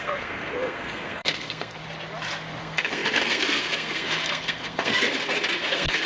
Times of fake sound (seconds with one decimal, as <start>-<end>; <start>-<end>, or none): 0.0-1.8; 2.6-5.1; 5.6-6.1